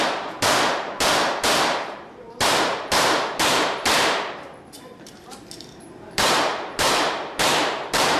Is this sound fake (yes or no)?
yes